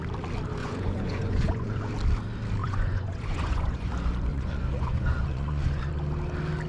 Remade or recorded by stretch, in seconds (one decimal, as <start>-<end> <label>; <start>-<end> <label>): 0.0-0.6 recorded; 0.6-1.9 remade; 1.9-2.6 recorded; 2.6-3.9 remade; 3.9-4.3 recorded; 4.3-5.9 remade; 5.9-6.7 recorded